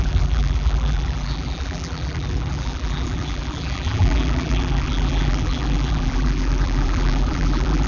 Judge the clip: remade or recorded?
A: remade